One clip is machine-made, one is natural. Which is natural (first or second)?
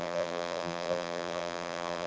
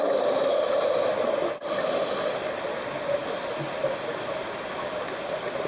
second